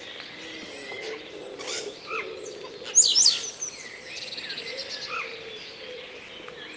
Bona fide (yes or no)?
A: yes